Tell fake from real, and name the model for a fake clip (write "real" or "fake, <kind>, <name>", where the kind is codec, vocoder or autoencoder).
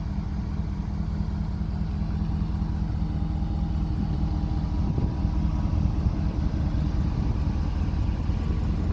real